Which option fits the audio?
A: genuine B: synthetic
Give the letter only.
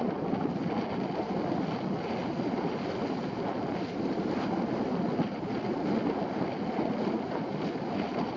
A